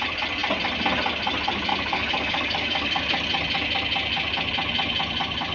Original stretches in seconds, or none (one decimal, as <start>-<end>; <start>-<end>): 0.0-1.7; 3.0-5.5

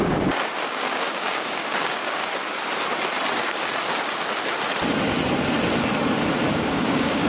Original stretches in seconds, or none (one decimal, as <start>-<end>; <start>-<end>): 2.2-6.5

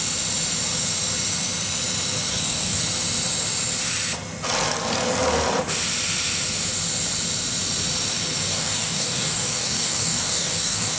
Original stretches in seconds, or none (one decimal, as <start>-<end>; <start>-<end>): 0.0-2.3; 2.8-8.5

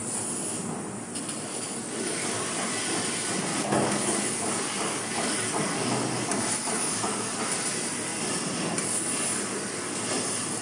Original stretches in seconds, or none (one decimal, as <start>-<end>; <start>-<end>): 0.0-1.5; 2.3-3.5; 7.4-10.6

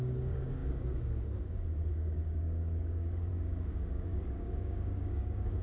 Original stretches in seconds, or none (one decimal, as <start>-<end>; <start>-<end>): none

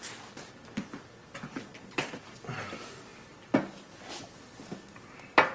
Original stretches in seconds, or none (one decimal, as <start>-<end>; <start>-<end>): 0.0-5.5

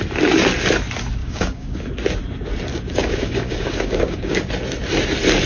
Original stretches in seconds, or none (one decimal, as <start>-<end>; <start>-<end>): 0.0-1.2; 1.9-2.7; 4.4-5.5